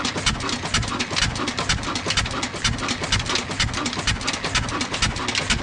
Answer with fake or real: real